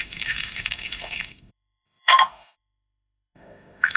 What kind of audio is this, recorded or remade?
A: remade